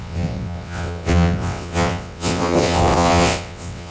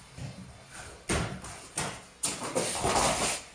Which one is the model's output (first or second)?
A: first